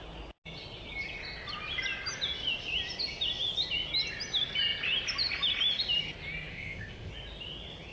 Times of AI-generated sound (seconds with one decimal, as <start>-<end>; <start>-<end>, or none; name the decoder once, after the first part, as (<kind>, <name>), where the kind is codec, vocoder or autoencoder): 6.5-7.1 (codec, ZipCodec)